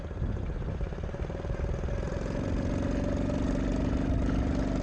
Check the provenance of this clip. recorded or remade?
recorded